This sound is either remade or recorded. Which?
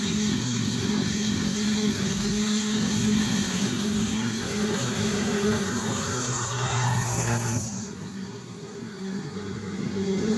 remade